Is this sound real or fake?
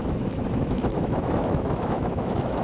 fake